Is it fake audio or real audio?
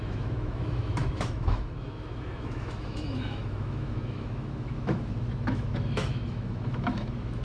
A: fake